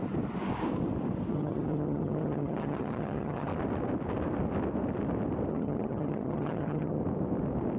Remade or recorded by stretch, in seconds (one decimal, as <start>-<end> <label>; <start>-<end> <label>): 0.0-1.3 recorded; 1.3-3.5 remade; 3.5-5.5 recorded; 5.5-7.0 remade; 7.0-7.8 recorded